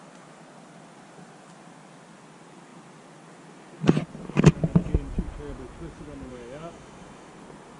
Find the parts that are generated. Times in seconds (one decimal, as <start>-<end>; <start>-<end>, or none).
6.3-7.3